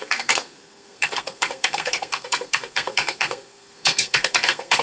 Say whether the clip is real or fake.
fake